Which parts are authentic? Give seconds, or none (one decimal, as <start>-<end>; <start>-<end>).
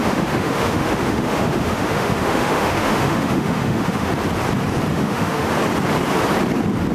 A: 4.1-4.9; 5.5-6.9